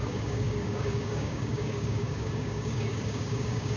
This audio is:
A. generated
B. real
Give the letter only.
A